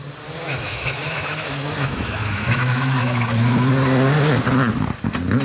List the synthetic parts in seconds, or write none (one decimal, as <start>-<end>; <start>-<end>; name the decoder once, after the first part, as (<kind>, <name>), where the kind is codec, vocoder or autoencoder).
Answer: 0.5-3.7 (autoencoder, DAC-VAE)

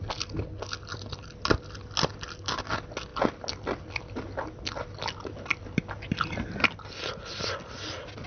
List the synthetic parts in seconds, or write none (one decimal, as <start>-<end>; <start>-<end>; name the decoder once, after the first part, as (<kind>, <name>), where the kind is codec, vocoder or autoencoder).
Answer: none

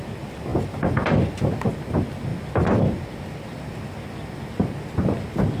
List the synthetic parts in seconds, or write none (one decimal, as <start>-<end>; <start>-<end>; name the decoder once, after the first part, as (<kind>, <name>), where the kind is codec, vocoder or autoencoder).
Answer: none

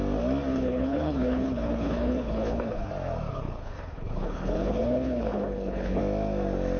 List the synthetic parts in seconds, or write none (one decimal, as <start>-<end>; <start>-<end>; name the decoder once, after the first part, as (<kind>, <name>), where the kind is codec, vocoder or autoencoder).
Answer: 0.5-2.9 (codec, HILCodec); 3.3-6.0